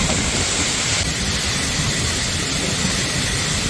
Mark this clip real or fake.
real